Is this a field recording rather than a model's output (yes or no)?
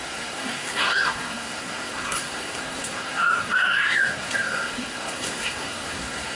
no